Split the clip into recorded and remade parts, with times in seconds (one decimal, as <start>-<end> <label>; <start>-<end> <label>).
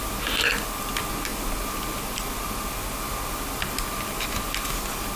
0.0-5.2 recorded